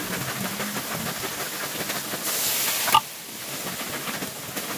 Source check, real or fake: real